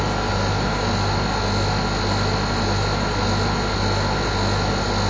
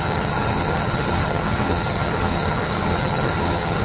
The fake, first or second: second